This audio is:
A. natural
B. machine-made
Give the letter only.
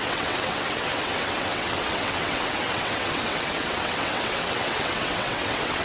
B